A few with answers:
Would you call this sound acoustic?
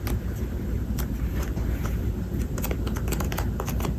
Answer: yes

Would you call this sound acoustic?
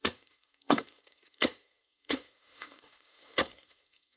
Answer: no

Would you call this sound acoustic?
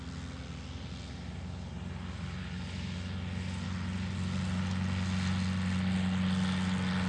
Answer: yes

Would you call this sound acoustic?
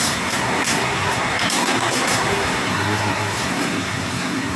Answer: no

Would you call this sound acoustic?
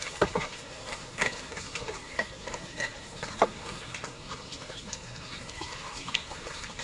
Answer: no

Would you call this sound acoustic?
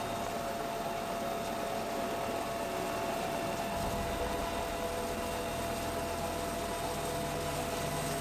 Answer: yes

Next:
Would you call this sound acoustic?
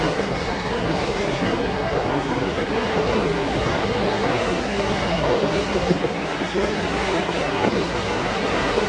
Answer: no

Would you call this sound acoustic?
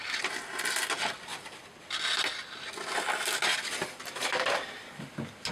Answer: yes